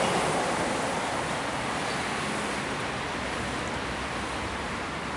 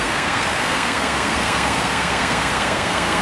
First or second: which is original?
first